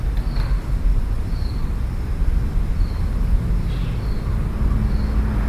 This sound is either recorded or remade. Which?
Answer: recorded